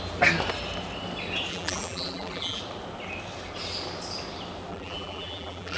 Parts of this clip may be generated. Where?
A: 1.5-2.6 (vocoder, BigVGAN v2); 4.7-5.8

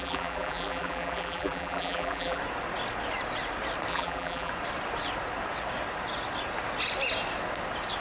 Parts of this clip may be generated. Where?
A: 0.0-2.4 (vocoder, BigVGAN v2); 3.9-4.5